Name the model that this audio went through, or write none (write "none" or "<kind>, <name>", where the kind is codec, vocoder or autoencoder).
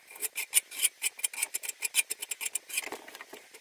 none